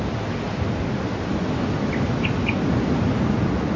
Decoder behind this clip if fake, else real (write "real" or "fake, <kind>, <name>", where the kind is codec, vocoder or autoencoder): real